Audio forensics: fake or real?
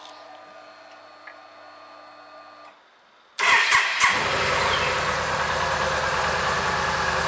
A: real